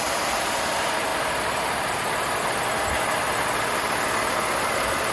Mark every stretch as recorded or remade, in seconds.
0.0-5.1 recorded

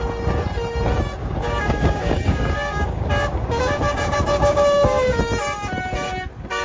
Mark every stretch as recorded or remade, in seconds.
0.0-1.2 recorded; 1.2-5.2 remade; 5.2-6.6 recorded

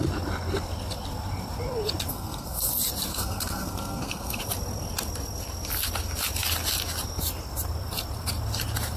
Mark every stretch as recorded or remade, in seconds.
0.0-2.1 recorded; 2.1-2.7 remade; 2.7-3.1 recorded; 3.1-4.4 remade; 4.4-9.0 recorded

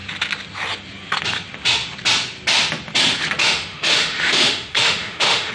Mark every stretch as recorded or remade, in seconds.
0.0-3.4 recorded; 3.4-5.5 remade

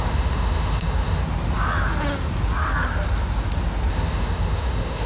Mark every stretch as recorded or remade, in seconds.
0.0-1.2 remade; 1.2-3.9 recorded; 3.9-5.1 remade

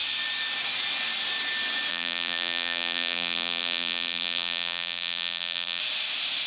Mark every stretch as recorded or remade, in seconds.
0.0-1.9 recorded; 1.9-5.8 remade; 5.8-6.5 recorded

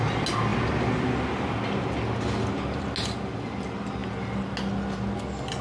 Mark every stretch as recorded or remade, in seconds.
0.0-5.6 recorded

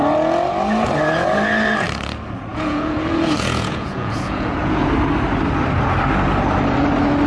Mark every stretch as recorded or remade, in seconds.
0.0-2.5 recorded; 2.5-4.9 remade; 4.9-7.3 recorded